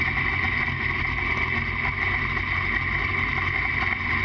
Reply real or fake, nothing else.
real